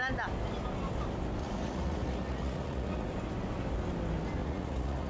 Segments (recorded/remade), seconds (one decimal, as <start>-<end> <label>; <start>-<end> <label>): 0.0-1.4 recorded; 1.4-3.1 remade; 3.1-4.4 recorded; 4.4-5.1 remade

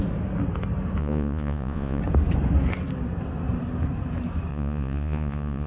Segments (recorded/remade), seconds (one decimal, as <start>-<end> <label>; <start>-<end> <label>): 0.0-1.0 recorded; 1.0-2.0 remade; 2.0-4.5 recorded; 4.5-5.7 remade